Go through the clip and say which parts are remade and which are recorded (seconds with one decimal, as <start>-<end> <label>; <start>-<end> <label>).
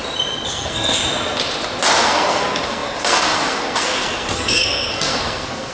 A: 0.0-0.5 recorded; 0.5-1.0 remade; 1.0-1.9 recorded; 1.9-5.7 remade